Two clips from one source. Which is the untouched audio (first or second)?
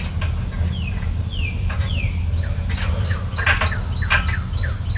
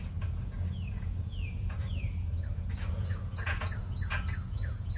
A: first